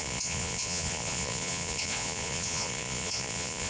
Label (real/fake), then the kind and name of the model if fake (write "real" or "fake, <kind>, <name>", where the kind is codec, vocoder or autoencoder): fake, vocoder, Vocos